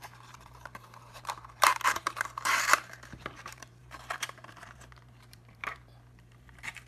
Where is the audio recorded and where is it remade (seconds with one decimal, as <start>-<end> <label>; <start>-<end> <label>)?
0.0-6.9 remade